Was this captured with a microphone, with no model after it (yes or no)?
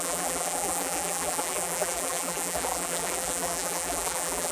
no